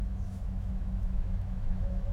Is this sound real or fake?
fake